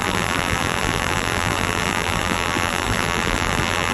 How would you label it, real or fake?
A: fake